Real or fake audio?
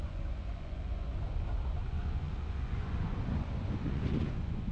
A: fake